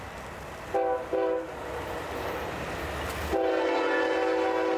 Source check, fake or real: real